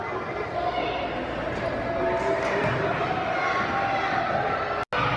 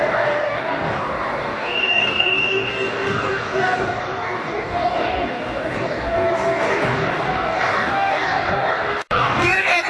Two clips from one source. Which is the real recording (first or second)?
first